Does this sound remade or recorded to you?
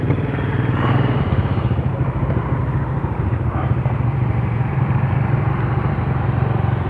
remade